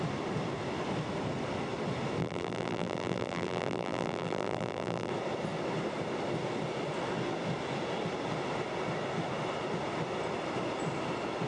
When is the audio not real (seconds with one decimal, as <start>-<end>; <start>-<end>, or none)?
2.2-5.1